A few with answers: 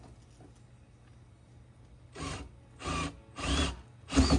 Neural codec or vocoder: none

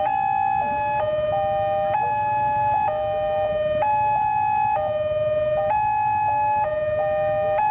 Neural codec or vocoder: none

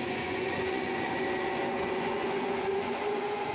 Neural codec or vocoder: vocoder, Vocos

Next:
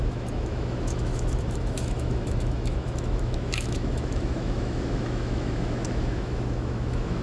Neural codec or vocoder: autoencoder, DAC-VAE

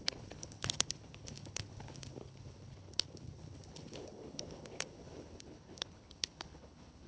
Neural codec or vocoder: codec, HILCodec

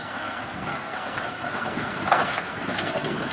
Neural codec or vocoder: codec, SNAC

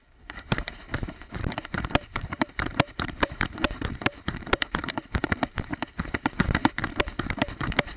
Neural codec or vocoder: vocoder, BigVGAN v2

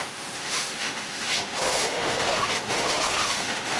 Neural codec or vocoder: autoencoder, DAC-VAE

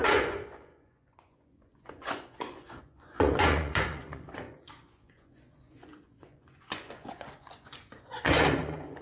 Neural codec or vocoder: vocoder, Vocos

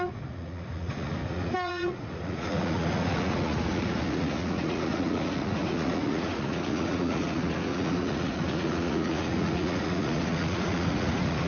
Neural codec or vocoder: vocoder, Vocos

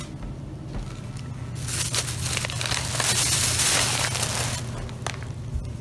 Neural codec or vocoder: none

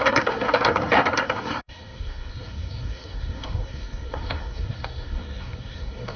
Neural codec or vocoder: codec, SNAC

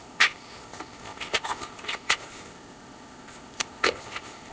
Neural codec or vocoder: codec, ZipCodec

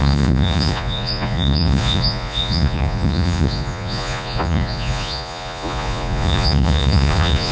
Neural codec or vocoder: vocoder, Vocos